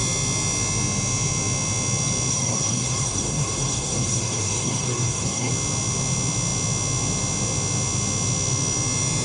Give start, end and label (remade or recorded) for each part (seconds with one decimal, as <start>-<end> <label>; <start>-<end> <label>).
0.0-2.3 recorded; 2.3-5.5 remade; 5.5-9.2 recorded